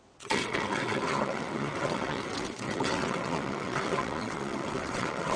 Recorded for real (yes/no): no